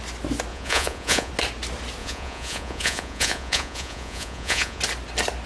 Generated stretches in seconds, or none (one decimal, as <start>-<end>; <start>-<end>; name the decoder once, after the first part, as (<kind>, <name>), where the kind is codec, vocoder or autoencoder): 0.5-1.3 (vocoder, Vocos); 2.0-4.8